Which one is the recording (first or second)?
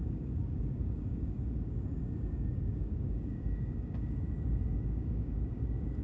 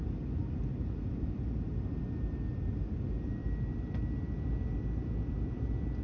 second